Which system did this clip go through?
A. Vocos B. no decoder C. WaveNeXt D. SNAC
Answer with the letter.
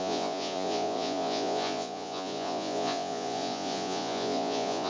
A